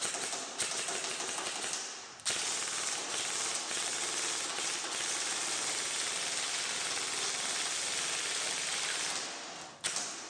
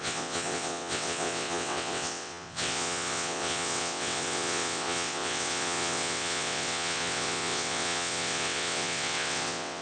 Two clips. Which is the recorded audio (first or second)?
first